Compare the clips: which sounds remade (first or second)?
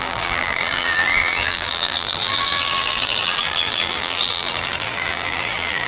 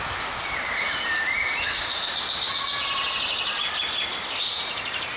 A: first